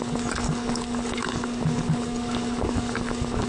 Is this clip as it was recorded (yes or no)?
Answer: no